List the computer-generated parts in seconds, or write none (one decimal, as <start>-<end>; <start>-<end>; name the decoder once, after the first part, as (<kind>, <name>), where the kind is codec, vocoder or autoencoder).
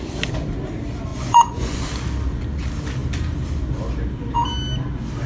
1.1-1.8 (vocoder, Vocos)